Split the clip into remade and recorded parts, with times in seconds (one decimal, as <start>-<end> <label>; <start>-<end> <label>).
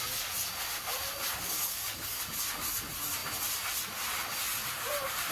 0.0-1.4 recorded; 1.4-2.2 remade; 2.2-5.3 recorded